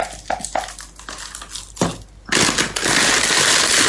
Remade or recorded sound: recorded